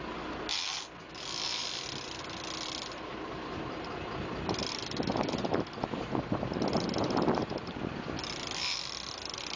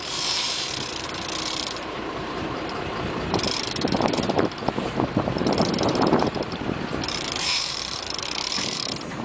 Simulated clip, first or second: second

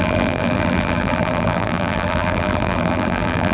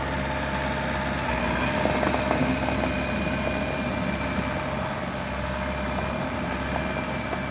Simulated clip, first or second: first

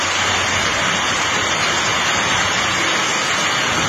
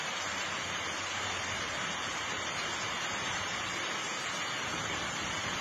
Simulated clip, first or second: second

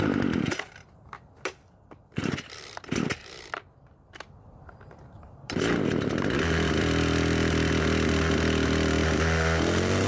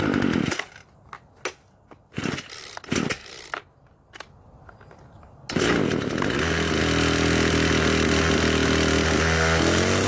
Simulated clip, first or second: first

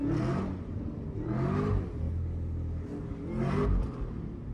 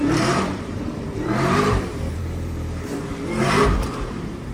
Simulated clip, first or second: second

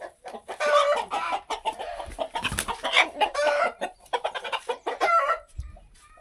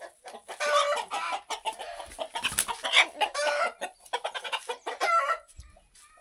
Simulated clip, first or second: first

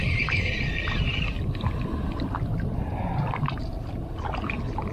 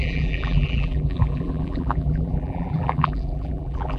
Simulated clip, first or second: second